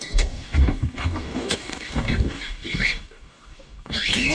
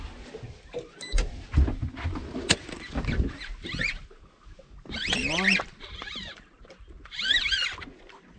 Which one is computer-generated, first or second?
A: first